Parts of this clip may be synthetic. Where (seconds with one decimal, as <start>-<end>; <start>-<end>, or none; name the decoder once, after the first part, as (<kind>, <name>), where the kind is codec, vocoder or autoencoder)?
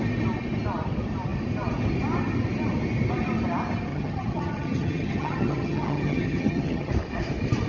3.9-6.9 (vocoder, HiFi-GAN)